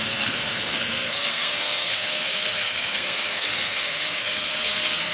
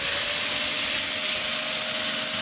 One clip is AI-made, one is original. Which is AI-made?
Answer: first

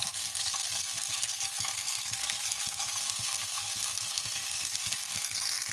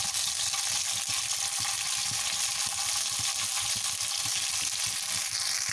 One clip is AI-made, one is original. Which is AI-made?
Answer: first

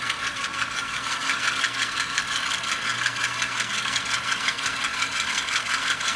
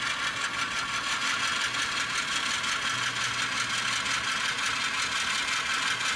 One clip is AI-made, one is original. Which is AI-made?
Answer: first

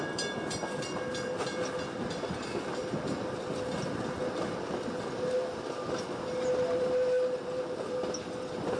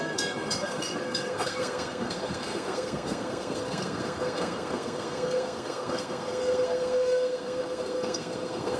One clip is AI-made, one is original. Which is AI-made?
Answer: second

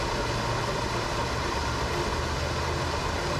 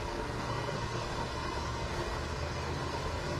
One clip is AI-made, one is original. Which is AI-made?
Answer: second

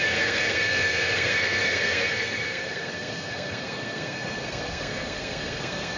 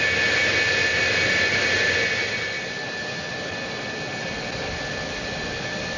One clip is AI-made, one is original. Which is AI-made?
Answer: first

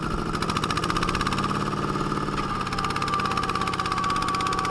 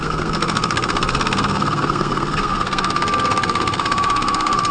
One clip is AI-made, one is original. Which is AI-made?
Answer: second